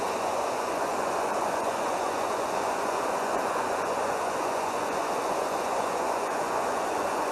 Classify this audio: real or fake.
fake